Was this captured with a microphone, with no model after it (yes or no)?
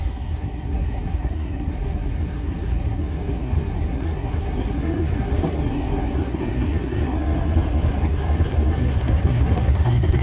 no